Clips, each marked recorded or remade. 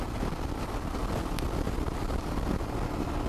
recorded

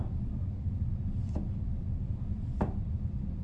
remade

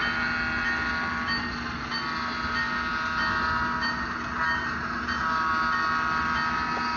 recorded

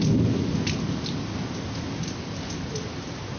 recorded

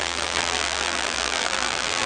remade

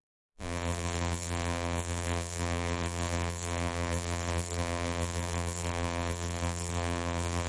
remade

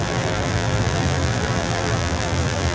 remade